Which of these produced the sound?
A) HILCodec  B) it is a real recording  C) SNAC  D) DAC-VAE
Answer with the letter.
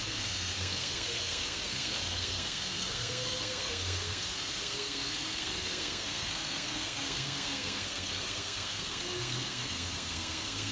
C